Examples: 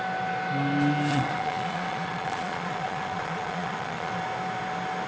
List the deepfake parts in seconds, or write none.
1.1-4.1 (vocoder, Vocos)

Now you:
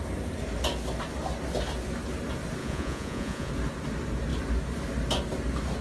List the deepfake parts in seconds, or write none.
2.6-3.5 (vocoder, Vocos)

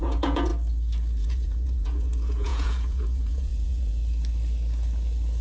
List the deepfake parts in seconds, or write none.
0.0-0.5 (vocoder, Vocos); 1.2-4.0